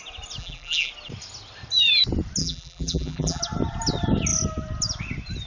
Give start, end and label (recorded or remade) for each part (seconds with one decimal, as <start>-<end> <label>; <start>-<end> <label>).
0.0-0.4 recorded; 0.4-0.9 remade; 0.9-2.4 recorded; 2.4-3.4 remade; 3.4-5.5 recorded